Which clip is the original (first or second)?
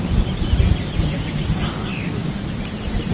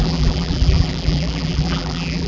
first